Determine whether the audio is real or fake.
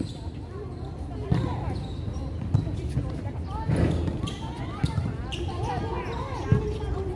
real